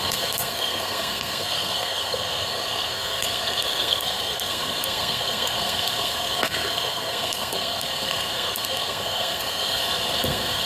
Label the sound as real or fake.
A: fake